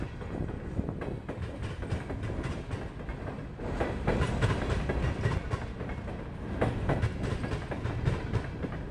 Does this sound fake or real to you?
real